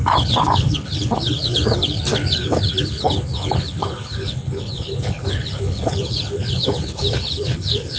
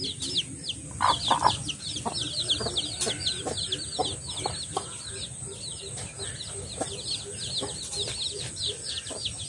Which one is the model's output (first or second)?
first